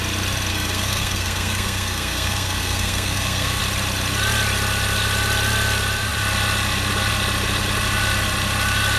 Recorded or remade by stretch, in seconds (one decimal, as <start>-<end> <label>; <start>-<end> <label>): 0.0-0.5 recorded; 0.5-3.6 remade; 3.6-9.0 recorded